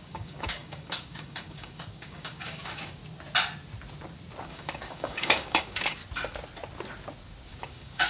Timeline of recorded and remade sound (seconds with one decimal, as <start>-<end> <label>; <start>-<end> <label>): 0.0-3.0 remade; 3.0-4.5 recorded; 4.5-6.0 remade; 6.0-7.5 recorded; 7.5-8.1 remade